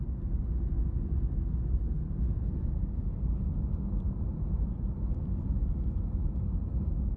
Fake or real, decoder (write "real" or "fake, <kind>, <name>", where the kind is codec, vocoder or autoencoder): real